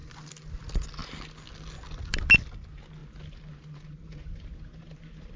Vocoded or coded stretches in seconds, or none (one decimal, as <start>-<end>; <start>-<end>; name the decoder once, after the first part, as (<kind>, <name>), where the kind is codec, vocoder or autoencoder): none